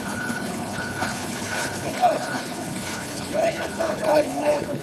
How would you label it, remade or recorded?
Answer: remade